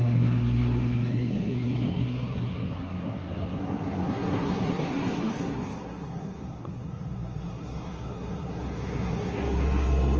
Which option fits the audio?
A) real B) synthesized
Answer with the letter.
B